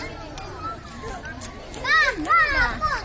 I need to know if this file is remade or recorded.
recorded